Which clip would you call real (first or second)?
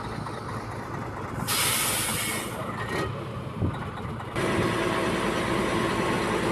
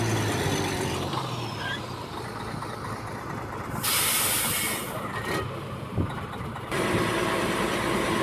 first